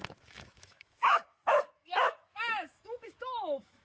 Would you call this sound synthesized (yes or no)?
yes